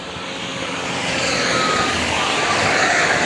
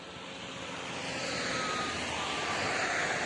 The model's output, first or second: first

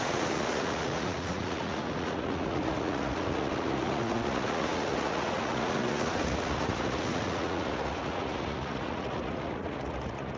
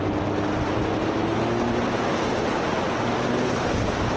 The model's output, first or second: first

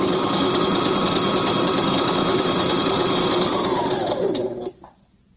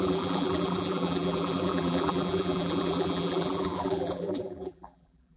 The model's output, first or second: second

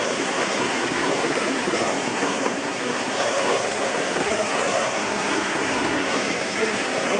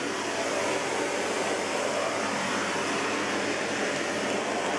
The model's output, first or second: first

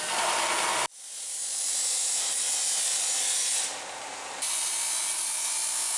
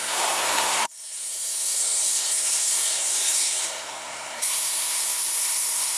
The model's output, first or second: second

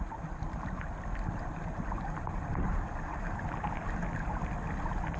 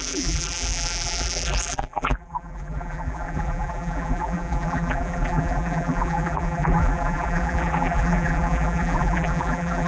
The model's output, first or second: second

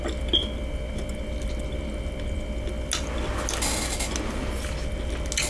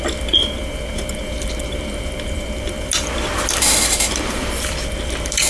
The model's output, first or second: second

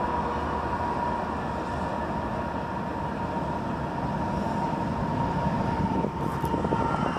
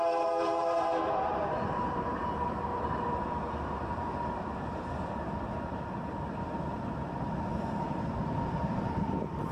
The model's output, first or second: second